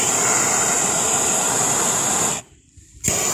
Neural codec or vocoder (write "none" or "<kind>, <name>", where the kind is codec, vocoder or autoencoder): none